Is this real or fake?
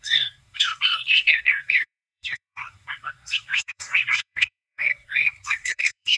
fake